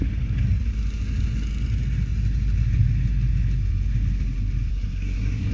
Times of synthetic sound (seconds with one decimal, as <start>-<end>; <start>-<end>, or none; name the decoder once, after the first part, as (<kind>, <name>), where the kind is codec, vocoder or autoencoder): 4.7-5.5 (codec, SNAC)